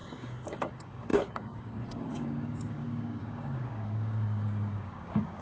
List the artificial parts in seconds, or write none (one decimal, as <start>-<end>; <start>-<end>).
0.0-5.4